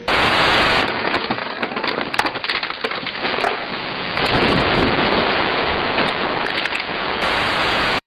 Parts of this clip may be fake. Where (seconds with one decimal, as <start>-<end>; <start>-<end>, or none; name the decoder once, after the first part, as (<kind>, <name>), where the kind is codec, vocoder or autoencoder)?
0.0-1.4 (vocoder, Vocos); 3.2-8.1